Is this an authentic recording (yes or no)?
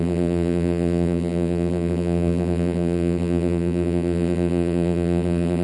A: no